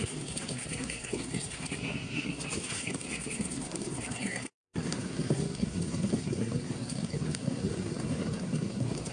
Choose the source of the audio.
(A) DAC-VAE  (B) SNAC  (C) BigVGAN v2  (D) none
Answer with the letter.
B